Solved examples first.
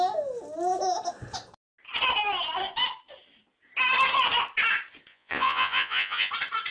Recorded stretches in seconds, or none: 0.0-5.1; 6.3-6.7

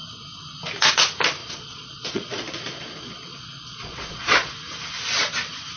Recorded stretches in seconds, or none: 0.0-1.4; 4.5-5.8

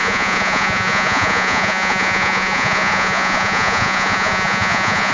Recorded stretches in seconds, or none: none

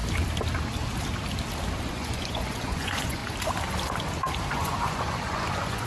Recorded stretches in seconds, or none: 0.0-1.8; 3.2-4.5

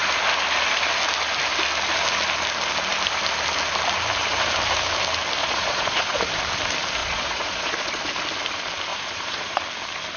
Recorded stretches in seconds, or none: 0.0-5.4; 6.2-7.0; 8.0-8.9; 9.6-10.2

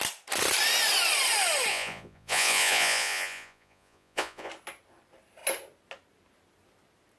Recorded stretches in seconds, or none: 0.0-1.7; 4.5-7.2

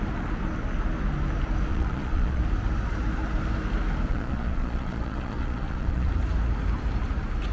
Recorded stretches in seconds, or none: 0.0-1.7; 2.4-4.1; 6.1-7.5

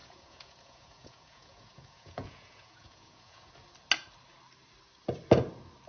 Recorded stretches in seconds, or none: 3.5-5.9